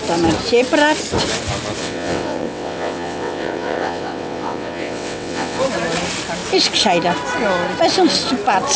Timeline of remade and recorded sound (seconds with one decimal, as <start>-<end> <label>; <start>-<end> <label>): 0.0-1.8 recorded; 1.8-5.6 remade; 5.6-8.8 recorded